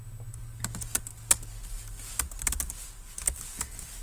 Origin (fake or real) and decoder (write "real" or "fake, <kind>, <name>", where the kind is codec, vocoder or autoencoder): real